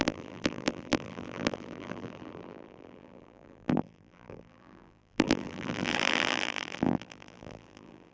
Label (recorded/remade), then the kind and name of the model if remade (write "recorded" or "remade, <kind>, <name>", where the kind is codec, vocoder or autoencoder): remade, vocoder, BigVGAN v2